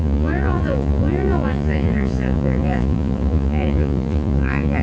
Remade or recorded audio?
remade